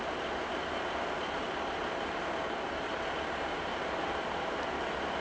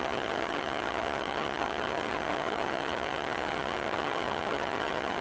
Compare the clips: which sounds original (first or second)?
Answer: first